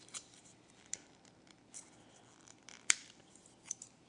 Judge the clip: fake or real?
fake